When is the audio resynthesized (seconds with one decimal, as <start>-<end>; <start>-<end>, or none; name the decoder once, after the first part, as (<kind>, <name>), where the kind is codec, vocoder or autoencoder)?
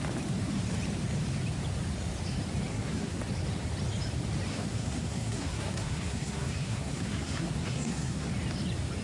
2.7-3.2 (codec, SNAC); 4.5-8.3